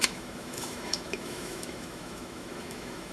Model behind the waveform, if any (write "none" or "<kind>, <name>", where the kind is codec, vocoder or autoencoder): autoencoder, DAC-VAE